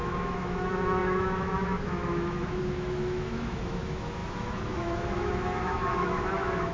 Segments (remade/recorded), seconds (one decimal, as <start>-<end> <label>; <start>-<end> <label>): 0.0-6.7 remade

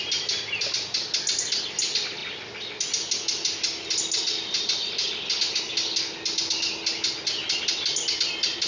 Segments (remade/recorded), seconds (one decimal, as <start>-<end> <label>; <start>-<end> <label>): 0.0-8.7 recorded

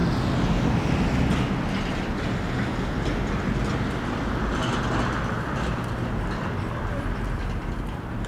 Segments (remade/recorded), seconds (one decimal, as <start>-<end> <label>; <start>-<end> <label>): 0.0-8.3 recorded

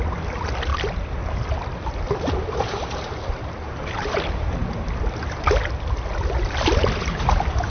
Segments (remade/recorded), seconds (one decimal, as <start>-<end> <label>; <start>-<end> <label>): 0.0-7.7 recorded

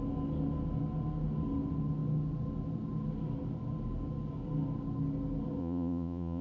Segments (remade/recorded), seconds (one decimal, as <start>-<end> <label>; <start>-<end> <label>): 0.0-5.6 recorded; 5.6-6.4 remade

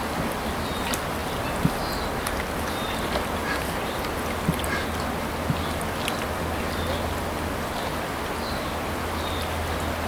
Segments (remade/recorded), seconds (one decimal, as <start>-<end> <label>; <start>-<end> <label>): 0.0-10.1 recorded

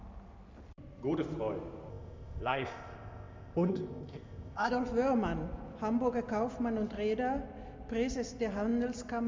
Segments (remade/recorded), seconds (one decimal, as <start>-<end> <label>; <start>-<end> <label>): 0.0-1.9 recorded; 1.9-4.7 remade; 4.7-9.3 recorded

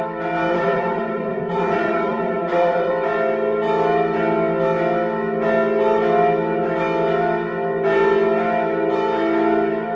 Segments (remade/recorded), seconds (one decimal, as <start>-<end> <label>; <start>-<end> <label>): 0.0-0.5 recorded; 0.5-2.9 remade; 2.9-9.9 recorded